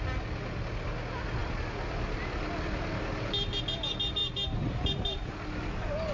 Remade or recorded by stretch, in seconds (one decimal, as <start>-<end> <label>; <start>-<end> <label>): 0.0-4.2 recorded; 4.2-5.3 remade; 5.3-6.1 recorded